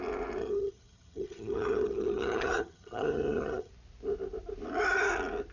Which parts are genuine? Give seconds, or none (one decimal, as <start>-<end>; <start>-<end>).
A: 0.0-0.4; 3.7-5.5